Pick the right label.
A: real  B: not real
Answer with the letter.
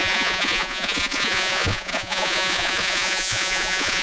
B